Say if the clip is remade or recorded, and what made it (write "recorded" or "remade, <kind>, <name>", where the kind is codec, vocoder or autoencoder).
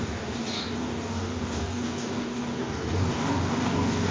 remade, codec, DAC